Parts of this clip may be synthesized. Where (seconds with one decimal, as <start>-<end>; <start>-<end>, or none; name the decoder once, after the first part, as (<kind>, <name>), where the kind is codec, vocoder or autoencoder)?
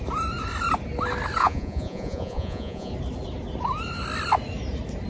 1.4-2.9 (vocoder, Vocos)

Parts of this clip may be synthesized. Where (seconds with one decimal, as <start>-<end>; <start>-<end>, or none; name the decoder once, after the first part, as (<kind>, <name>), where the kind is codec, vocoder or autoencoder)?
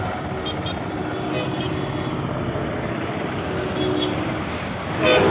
none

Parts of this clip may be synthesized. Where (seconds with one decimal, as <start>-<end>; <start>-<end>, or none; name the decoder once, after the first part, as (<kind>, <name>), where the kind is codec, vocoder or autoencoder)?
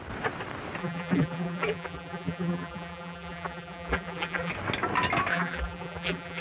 0.8-4.5 (vocoder, BigVGAN v2); 5.3-6.4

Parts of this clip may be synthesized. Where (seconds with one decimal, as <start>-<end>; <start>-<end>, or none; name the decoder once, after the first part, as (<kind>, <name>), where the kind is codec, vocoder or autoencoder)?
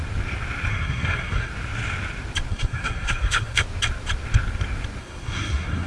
0.7-1.5 (codec, SNAC); 2.5-3.6; 5.0-5.9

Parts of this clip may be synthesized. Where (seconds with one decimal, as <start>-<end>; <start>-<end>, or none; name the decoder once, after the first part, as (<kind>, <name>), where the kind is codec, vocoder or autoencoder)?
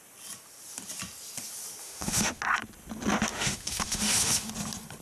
1.8-2.4 (autoencoder, DAC-VAE); 3.3-4.5